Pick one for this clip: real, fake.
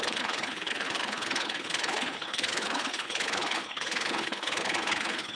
fake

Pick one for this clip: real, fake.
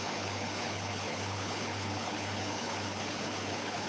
fake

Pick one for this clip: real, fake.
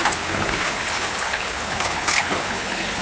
fake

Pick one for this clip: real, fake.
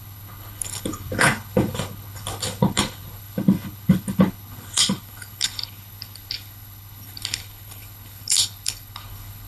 fake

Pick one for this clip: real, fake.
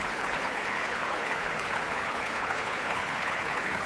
fake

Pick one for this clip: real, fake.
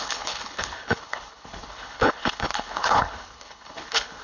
fake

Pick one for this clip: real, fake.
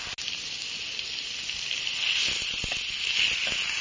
real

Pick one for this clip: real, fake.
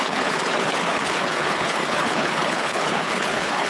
fake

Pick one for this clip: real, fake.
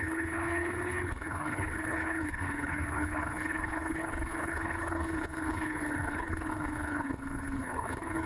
fake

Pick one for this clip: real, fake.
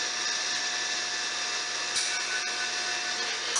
real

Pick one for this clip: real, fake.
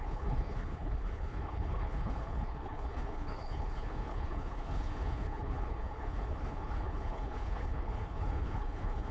fake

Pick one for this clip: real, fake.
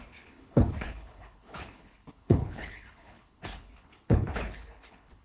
fake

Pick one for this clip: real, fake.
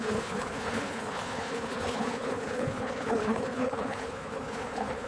fake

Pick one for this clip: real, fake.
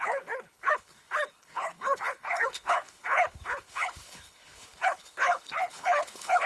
fake